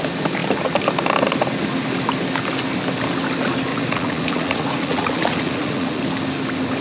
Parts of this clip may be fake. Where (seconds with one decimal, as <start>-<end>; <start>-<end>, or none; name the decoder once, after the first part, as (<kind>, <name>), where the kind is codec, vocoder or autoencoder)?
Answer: 3.7-6.0 (vocoder, Vocos)